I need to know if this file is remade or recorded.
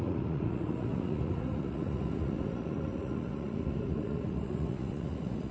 remade